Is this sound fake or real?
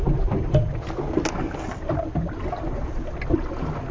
real